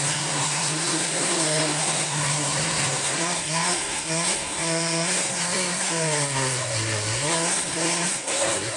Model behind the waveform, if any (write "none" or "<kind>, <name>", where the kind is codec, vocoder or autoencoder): codec, SNAC